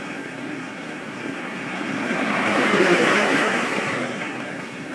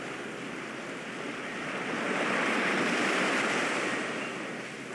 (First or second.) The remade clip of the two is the first